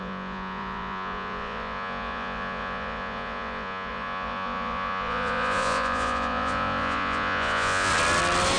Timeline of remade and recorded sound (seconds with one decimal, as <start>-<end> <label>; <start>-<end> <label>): 0.0-7.9 remade; 7.9-8.6 recorded

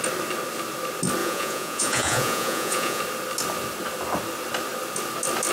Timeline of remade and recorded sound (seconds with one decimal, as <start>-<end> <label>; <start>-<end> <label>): 0.0-1.2 recorded; 1.2-3.0 remade; 3.0-5.5 recorded